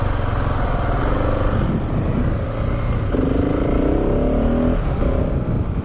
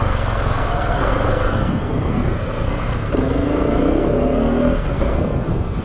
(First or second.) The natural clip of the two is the first